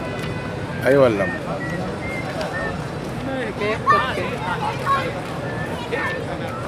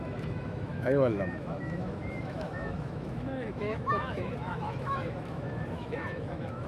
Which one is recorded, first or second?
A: first